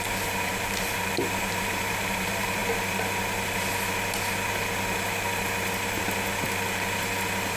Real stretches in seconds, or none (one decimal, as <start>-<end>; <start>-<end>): 2.6-7.6